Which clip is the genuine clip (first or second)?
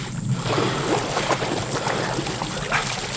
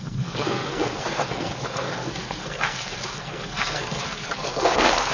first